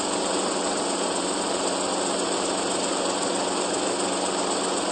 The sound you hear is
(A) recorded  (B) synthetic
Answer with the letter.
A